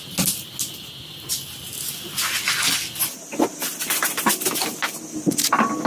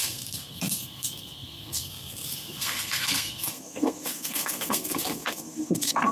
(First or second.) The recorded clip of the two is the first